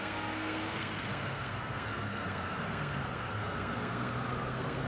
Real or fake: fake